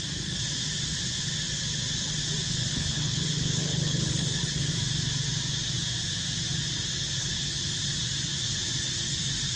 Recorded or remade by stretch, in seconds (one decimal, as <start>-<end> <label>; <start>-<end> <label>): 0.0-2.7 recorded; 2.7-4.7 remade; 4.7-7.2 recorded; 7.2-7.7 remade; 7.7-9.6 recorded